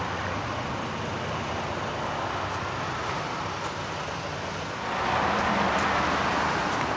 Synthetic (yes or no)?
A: no